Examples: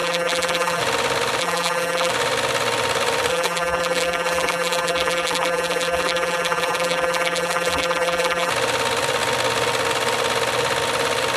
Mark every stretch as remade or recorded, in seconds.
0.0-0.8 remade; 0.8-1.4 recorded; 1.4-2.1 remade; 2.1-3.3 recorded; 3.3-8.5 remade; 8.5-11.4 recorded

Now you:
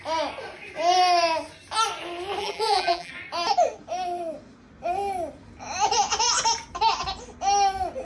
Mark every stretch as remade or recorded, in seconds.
0.0-2.4 recorded; 2.4-3.1 remade; 3.1-8.0 recorded

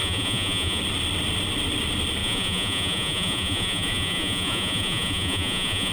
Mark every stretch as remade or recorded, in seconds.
0.0-0.8 remade; 0.8-2.2 recorded; 2.2-5.9 remade

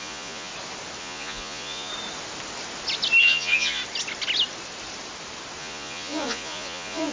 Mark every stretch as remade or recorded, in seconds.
0.0-0.5 remade; 0.5-1.0 recorded; 1.0-1.9 remade; 1.9-3.2 recorded; 3.2-3.8 remade; 3.8-5.6 recorded; 5.6-7.1 remade

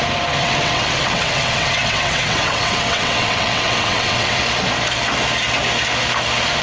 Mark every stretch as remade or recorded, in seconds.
0.0-0.4 recorded; 0.4-4.4 remade; 4.4-6.6 recorded